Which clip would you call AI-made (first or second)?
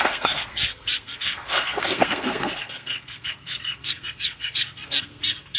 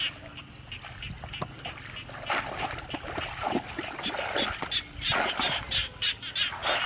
first